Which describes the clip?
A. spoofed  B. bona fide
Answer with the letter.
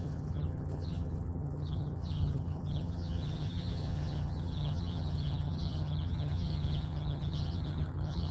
A